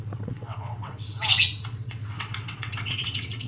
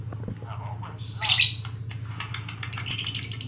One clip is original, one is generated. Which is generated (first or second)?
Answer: first